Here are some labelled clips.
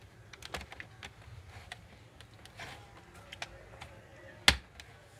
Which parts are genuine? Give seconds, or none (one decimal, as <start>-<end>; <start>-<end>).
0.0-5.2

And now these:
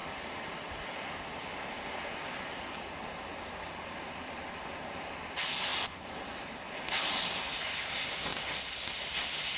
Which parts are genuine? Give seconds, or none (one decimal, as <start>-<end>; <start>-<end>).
0.0-9.6

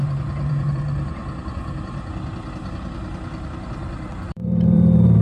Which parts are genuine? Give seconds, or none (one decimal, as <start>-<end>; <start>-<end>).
1.2-4.3